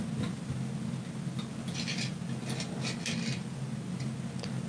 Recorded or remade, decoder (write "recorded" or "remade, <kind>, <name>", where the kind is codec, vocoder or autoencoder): recorded